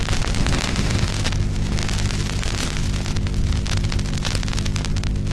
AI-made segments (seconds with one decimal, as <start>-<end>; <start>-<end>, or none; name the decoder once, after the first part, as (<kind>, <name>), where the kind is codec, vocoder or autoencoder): 0.4-1.1 (autoencoder, DAC-VAE)